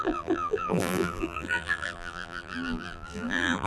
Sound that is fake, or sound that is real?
fake